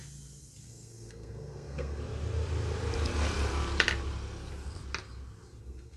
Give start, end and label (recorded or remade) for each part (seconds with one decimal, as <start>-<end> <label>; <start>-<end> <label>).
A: 0.0-0.6 recorded; 0.6-2.0 remade; 2.0-5.6 recorded; 5.6-6.0 remade